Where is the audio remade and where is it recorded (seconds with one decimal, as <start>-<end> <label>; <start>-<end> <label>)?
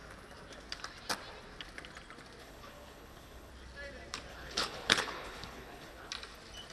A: 0.0-2.4 recorded; 2.4-3.5 remade; 3.5-4.3 recorded; 4.3-6.1 remade; 6.1-6.7 recorded